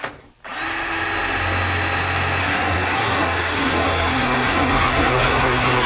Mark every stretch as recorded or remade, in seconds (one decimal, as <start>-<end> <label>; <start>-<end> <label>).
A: 0.0-2.4 recorded; 2.4-5.9 remade